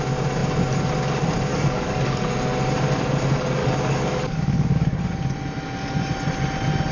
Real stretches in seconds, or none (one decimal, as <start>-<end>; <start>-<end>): 0.0-1.5; 2.3-3.6; 5.1-6.9